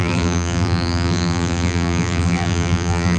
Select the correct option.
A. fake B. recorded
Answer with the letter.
A